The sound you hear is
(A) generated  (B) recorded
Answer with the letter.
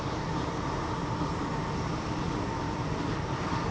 B